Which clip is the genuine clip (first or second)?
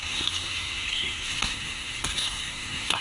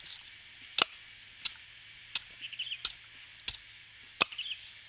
second